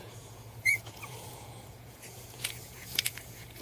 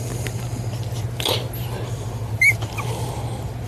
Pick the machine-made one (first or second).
first